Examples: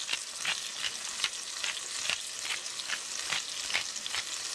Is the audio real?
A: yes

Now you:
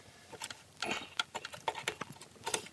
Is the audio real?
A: yes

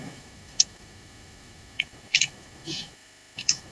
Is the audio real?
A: no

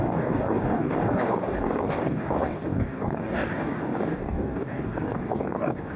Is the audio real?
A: no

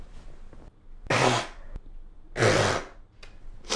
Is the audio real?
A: yes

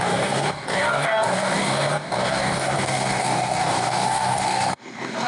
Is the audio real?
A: no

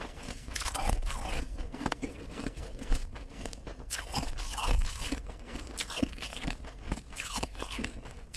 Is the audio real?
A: no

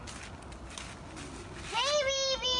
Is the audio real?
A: yes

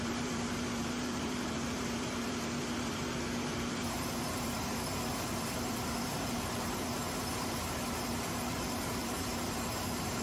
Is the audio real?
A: no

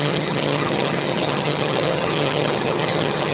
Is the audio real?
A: no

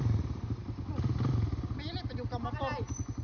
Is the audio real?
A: yes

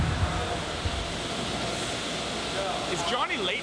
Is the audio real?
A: yes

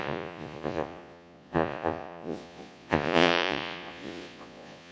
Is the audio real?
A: no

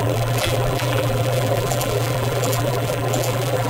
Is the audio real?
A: no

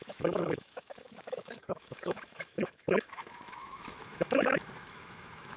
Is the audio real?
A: no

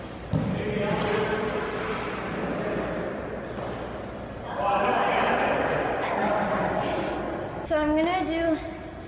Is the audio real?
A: yes